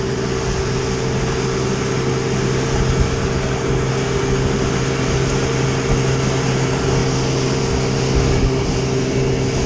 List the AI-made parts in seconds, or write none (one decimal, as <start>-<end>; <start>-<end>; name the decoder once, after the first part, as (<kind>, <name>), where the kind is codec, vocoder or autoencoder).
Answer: none